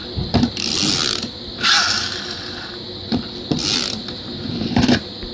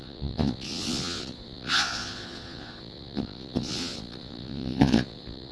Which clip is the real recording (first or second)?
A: first